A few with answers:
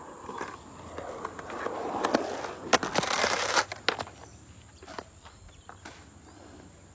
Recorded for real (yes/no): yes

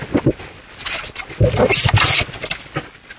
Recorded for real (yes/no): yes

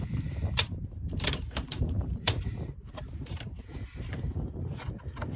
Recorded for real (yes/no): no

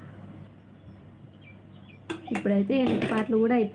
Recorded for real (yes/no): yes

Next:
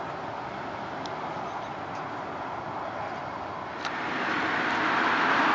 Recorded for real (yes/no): yes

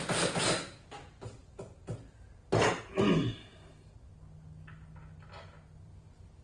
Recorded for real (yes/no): yes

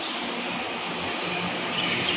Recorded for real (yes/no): yes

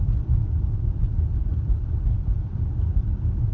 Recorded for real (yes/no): yes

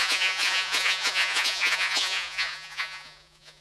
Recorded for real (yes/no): no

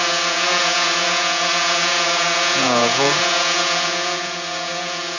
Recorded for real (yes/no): no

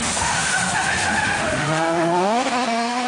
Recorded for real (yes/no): no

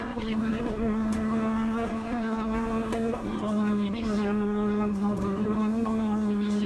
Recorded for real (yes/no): no